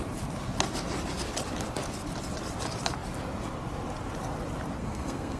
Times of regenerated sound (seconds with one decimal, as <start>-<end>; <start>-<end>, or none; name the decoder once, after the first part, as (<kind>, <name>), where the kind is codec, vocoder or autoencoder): 4.8-5.4 (codec, SNAC)